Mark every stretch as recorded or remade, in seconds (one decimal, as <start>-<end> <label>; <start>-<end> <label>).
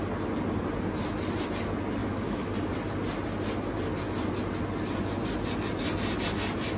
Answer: 0.0-2.0 recorded; 2.0-2.5 remade; 2.5-6.8 recorded